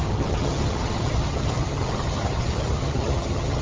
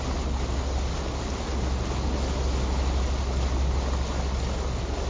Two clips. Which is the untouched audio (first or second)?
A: second